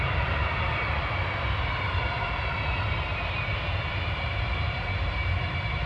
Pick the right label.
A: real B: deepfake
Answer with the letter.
B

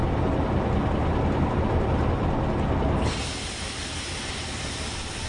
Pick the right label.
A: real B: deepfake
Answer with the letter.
A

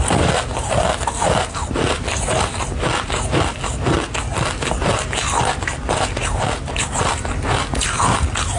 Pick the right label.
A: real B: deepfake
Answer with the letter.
A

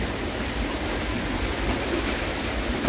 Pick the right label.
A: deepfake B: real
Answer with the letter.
B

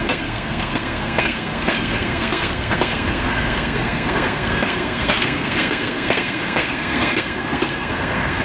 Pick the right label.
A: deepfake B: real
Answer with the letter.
A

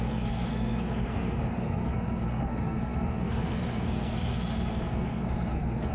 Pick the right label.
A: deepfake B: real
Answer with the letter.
A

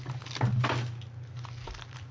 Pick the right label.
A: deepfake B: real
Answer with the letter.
B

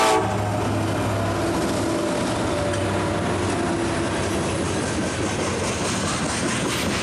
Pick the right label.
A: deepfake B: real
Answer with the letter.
B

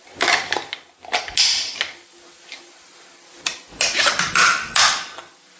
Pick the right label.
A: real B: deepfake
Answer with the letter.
A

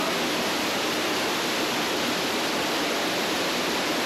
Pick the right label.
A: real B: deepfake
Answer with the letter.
A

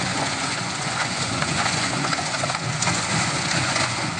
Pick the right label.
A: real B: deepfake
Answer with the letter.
B